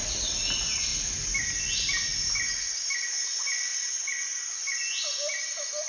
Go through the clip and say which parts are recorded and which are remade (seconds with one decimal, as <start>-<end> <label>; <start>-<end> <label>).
0.0-3.7 recorded; 3.7-4.2 remade; 4.2-5.9 recorded